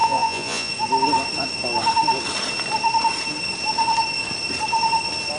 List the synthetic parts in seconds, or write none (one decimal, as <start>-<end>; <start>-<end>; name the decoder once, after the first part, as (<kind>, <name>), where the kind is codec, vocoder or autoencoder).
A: 0.0-0.7 (vocoder, Vocos)